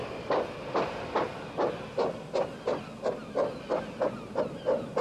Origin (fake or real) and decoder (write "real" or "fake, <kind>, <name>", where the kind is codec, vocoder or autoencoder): real